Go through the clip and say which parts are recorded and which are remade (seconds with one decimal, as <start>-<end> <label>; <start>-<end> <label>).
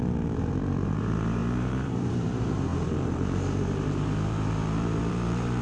0.0-5.6 remade